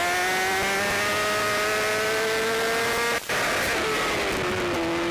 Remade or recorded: recorded